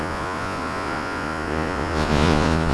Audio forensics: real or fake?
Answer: fake